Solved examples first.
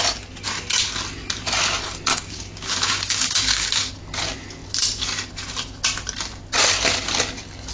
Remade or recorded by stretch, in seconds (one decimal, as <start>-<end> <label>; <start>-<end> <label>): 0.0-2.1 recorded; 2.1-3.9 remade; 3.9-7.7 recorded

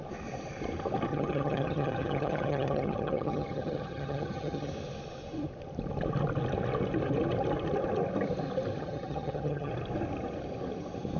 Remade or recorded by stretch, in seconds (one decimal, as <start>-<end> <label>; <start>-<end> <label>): 0.0-1.1 recorded; 1.1-4.7 remade; 4.7-8.8 recorded; 8.8-9.7 remade; 9.7-11.2 recorded

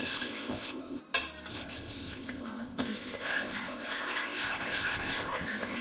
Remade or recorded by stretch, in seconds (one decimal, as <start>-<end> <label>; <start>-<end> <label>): 0.0-1.0 remade; 1.0-1.5 recorded; 1.5-5.8 remade

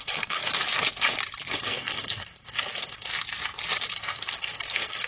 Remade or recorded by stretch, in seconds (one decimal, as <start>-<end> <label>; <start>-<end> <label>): 0.0-0.4 remade; 0.4-1.5 recorded; 1.5-3.1 remade; 3.1-3.9 recorded; 3.9-5.1 remade